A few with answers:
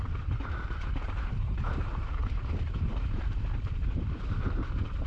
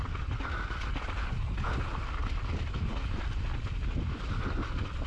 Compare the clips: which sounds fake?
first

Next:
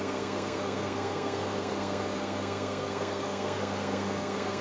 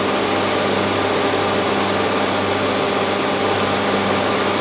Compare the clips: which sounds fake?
first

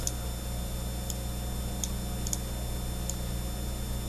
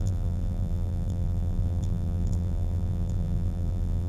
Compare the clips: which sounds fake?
second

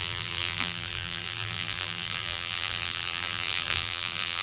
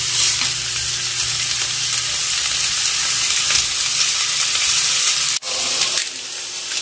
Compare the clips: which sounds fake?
first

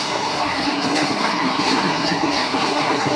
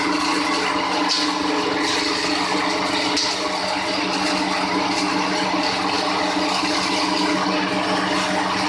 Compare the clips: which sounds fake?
first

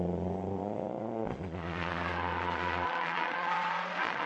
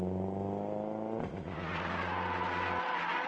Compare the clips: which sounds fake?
first